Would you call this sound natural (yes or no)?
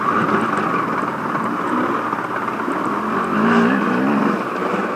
yes